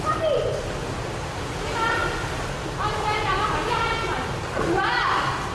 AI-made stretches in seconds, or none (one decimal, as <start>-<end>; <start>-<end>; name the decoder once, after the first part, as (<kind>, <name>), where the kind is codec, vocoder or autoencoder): none